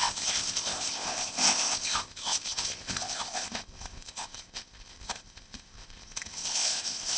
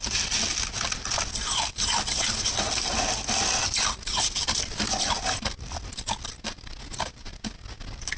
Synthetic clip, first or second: first